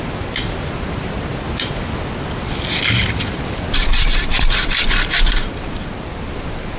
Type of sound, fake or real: real